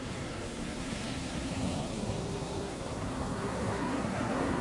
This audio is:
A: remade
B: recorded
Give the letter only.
A